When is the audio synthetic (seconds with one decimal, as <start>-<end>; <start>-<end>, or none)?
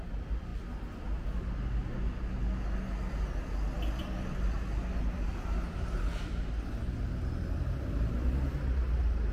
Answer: none